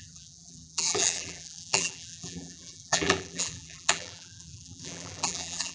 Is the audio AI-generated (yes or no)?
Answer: yes